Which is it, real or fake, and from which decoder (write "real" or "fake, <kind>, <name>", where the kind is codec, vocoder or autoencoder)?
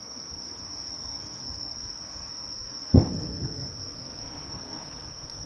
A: fake, codec, SNAC